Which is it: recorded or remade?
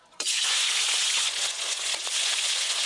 remade